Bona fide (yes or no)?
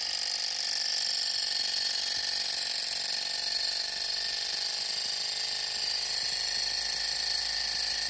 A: yes